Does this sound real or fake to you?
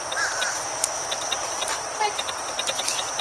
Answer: real